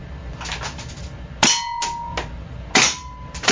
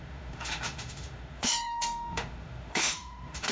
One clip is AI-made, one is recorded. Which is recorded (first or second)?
first